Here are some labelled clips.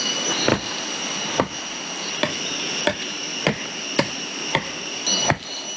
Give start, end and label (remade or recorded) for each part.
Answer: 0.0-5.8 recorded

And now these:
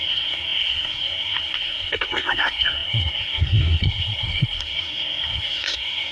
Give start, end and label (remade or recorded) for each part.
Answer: 0.0-6.1 remade

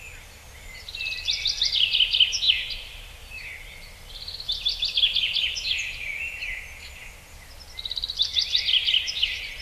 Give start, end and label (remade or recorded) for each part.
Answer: 0.0-9.6 recorded

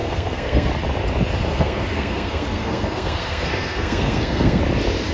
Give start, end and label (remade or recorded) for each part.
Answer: 0.0-0.7 remade; 0.7-1.5 recorded; 1.5-4.6 remade; 4.6-5.1 recorded

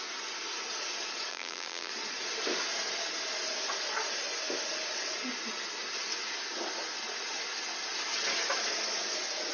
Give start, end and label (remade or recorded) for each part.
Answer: 0.0-1.3 recorded; 1.3-1.9 remade; 1.9-9.5 recorded

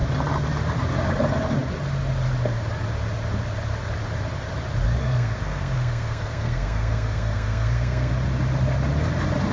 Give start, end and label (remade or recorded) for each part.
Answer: 0.0-5.0 recorded; 5.0-8.1 remade; 8.1-9.5 recorded